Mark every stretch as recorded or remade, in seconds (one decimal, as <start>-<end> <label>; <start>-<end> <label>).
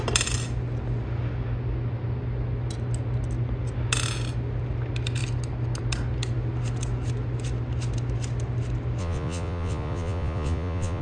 0.0-9.0 recorded; 9.0-11.0 remade